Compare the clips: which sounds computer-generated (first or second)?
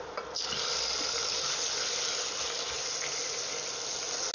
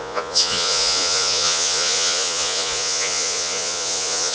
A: second